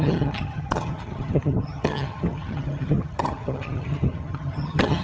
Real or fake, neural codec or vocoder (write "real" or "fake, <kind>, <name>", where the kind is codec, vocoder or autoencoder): fake, vocoder, HiFi-GAN